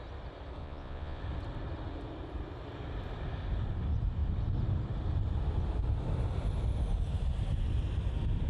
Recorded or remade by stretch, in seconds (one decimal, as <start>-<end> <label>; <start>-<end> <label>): 0.0-0.6 recorded; 0.6-1.2 remade; 1.2-8.5 recorded